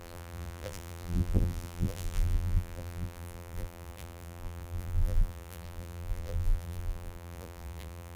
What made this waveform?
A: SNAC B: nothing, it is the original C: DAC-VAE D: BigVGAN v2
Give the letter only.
D